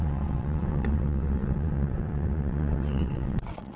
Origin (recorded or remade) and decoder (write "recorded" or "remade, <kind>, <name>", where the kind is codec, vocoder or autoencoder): remade, vocoder, WaveNeXt